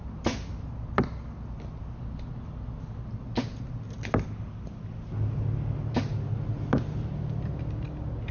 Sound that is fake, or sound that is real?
real